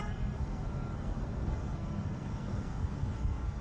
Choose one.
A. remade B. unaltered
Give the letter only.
A